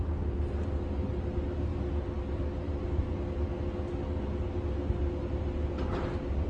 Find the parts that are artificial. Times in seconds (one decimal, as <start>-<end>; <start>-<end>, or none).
none